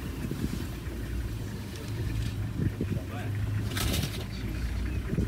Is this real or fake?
fake